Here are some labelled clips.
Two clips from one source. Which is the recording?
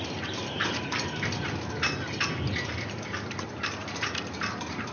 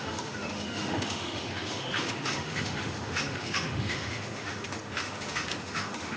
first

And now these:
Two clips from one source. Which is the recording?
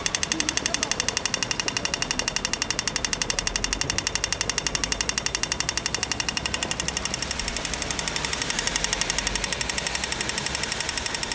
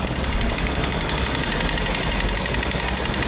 first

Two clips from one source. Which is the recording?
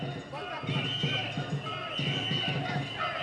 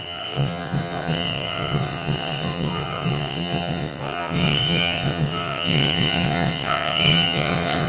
first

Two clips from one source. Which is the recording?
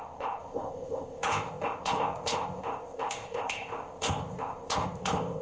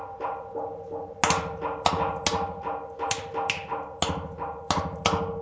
second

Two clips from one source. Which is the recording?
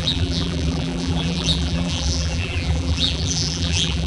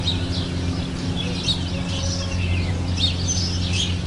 second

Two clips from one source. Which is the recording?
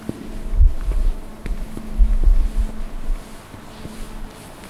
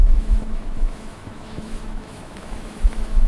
first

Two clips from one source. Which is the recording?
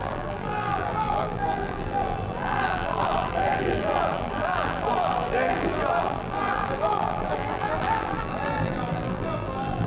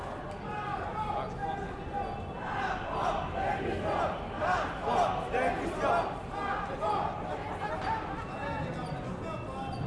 second